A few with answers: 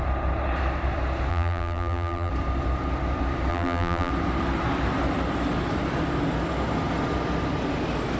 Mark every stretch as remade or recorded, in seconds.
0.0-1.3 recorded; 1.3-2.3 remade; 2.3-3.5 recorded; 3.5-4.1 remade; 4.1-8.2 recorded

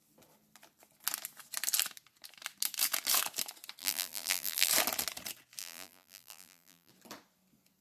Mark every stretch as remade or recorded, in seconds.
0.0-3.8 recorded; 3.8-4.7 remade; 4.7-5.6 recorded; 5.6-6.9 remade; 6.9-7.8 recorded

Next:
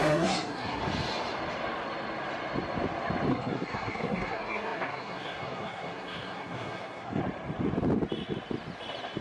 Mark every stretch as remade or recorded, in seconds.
0.0-0.8 remade; 0.8-3.3 recorded; 3.3-7.2 remade; 7.2-9.2 recorded